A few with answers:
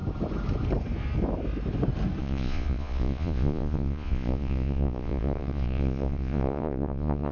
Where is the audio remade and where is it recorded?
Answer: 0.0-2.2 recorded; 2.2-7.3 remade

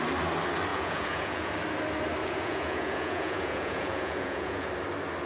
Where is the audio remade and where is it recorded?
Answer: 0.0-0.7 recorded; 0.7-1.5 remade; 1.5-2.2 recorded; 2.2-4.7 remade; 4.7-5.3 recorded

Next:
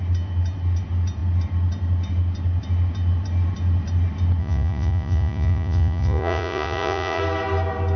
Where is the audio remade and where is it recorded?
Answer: 0.0-4.4 recorded; 4.4-7.2 remade; 7.2-8.0 recorded